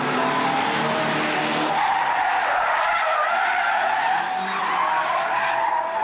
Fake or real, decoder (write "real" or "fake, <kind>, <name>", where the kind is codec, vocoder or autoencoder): real